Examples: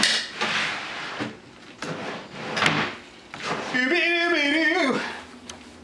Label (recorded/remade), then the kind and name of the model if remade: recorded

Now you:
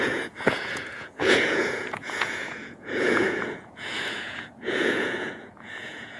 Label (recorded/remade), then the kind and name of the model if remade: remade, vocoder, Vocos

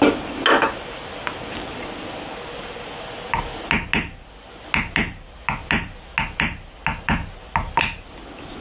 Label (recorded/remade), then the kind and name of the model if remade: recorded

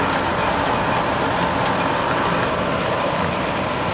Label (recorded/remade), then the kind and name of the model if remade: recorded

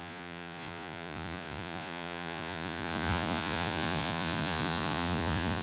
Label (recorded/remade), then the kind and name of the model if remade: remade, vocoder, Vocos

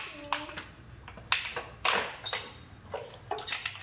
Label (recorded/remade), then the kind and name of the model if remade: recorded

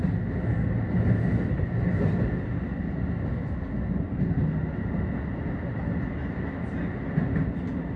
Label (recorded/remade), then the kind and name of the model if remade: recorded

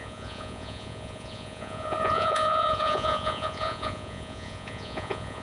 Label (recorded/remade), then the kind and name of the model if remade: remade, vocoder, Vocos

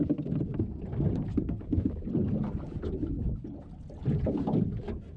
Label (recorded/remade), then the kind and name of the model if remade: recorded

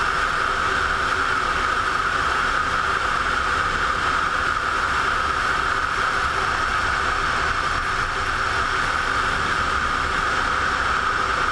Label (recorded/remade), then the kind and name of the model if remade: recorded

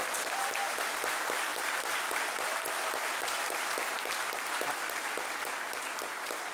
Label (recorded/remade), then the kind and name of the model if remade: recorded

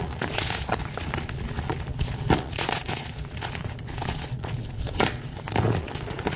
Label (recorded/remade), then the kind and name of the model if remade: remade, vocoder, Vocos